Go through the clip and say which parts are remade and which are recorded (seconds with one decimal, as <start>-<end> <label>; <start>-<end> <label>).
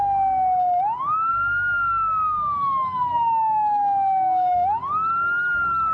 0.0-1.3 recorded; 1.3-4.8 remade; 4.8-5.9 recorded